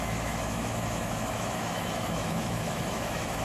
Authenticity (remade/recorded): remade